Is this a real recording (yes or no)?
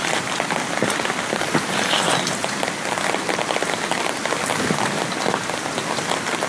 no